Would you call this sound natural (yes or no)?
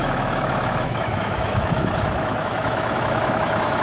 no